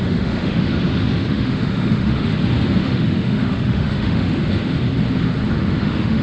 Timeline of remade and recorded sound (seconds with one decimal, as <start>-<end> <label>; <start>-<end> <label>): 0.0-0.7 remade; 0.7-1.3 recorded; 1.3-2.3 remade; 2.3-2.8 recorded; 2.8-4.4 remade; 4.4-5.8 recorded; 5.8-6.2 remade